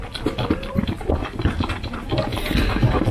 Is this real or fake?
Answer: real